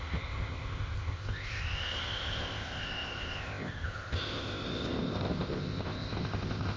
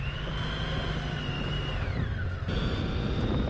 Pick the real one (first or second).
second